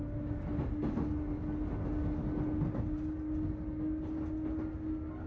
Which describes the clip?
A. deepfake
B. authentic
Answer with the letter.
B